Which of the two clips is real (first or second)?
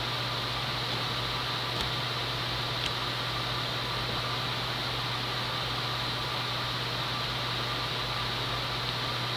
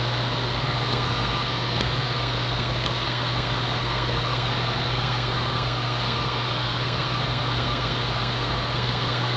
first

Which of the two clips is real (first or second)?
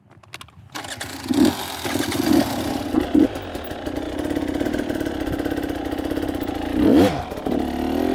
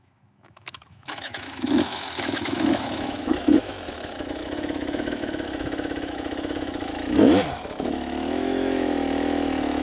first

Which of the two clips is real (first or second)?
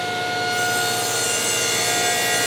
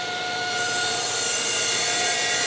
first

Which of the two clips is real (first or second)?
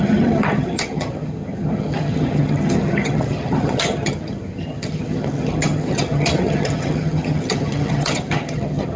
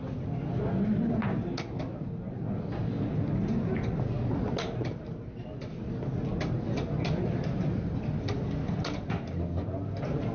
second